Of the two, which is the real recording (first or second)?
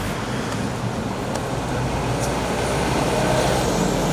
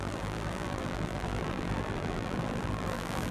first